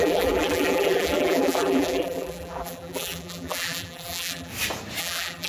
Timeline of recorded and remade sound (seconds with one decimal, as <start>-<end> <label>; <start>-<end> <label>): 0.0-4.5 remade; 4.5-5.0 recorded; 5.0-5.5 remade